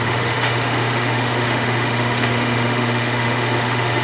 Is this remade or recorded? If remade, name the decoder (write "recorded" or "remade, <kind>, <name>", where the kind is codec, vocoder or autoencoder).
remade, autoencoder, DAC-VAE